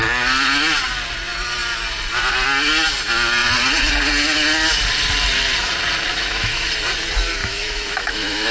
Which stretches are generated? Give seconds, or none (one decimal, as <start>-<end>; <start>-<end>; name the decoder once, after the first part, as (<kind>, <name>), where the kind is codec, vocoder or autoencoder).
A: 6.1-6.7 (autoencoder, DAC-VAE); 7.4-8.5